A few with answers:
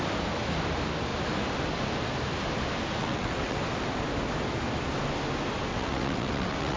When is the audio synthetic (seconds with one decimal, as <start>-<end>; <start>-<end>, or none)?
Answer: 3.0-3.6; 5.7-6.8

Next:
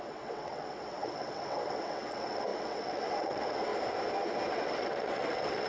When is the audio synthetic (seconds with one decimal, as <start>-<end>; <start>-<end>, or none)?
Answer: 0.0-3.7; 4.5-5.7

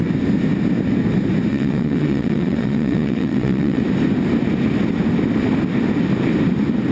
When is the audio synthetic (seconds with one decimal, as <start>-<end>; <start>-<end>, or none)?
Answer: 1.5-3.8

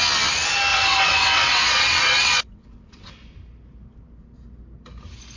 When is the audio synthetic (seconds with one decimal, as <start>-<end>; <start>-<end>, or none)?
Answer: 0.7-3.1

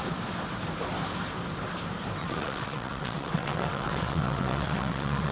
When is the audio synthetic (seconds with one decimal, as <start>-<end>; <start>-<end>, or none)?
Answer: 2.2-5.3

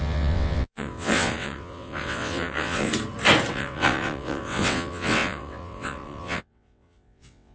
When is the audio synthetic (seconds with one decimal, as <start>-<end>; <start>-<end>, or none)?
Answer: 0.0-2.9; 3.5-7.5

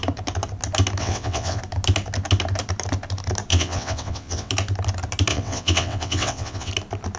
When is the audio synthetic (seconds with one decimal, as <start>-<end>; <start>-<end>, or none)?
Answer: 1.0-1.6; 3.5-4.5; 5.3-6.7